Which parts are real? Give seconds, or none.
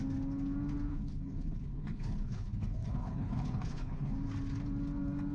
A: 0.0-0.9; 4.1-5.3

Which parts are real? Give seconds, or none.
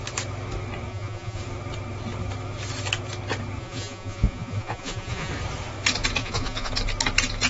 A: 0.0-0.9; 1.4-3.6; 5.3-6.2; 6.7-7.5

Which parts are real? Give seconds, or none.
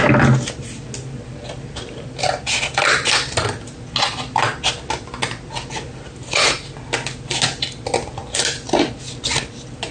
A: 0.0-8.2; 8.9-9.9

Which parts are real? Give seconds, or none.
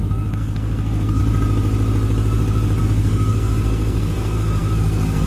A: 1.2-2.8